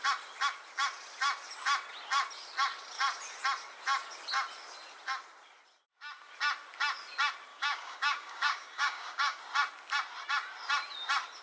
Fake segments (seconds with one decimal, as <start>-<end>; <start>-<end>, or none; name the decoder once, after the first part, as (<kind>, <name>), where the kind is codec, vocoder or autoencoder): 7.5-9.4 (codec, DAC)